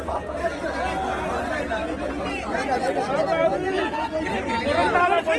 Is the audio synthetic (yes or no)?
no